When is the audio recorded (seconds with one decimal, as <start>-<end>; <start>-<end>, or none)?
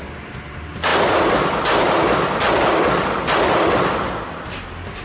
0.0-5.0